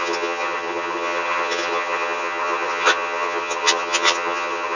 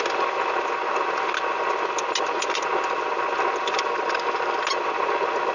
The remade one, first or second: first